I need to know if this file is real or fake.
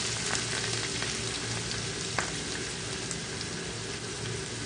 real